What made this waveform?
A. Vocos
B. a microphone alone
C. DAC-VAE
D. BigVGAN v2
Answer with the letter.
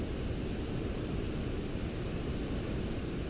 B